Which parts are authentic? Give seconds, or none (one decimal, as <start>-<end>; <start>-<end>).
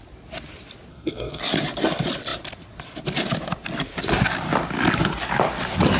0.0-0.9; 1.4-6.0